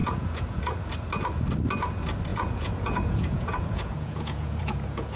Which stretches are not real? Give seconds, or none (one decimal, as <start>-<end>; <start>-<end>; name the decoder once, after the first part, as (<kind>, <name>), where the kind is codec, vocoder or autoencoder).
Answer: 0.0-0.8 (vocoder, Vocos); 2.3-5.2